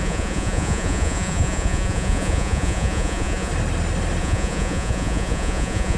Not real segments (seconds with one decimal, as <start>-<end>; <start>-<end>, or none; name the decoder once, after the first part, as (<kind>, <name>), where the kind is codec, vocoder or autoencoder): 0.0-3.5 (vocoder, Vocos); 4.2-6.0